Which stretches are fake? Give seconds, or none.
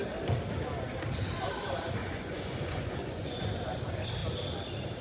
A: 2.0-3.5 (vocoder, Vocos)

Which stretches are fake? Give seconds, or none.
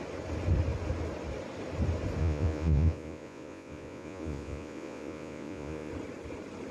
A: 2.2-5.9 (vocoder, Vocos)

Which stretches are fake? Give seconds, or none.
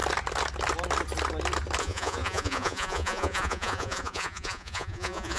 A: 1.8-5.4 (vocoder, Vocos)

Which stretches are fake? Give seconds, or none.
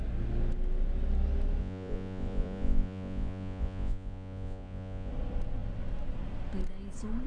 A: 1.6-5.1 (vocoder, Vocos)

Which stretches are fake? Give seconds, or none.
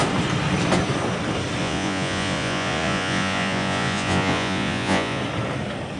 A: 1.6-5.2 (vocoder, Vocos)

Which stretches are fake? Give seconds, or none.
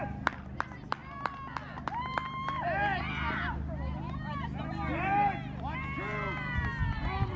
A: none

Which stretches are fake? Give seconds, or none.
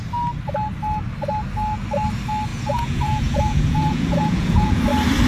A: 2.5-4.8 (vocoder, Vocos)